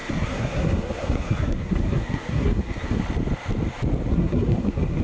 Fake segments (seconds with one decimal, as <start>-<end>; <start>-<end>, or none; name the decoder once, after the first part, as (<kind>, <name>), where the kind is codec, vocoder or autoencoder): 0.0-3.0 (codec, SNAC); 4.1-5.0